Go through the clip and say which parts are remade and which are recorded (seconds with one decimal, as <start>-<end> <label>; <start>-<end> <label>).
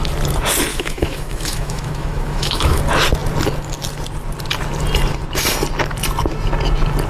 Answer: 0.0-0.7 recorded; 0.7-2.8 remade; 2.8-7.1 recorded